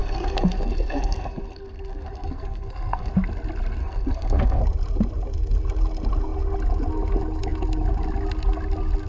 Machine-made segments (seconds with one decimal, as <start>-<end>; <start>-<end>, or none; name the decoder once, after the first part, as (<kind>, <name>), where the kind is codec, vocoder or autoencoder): 0.0-3.1 (codec, SNAC); 3.8-4.6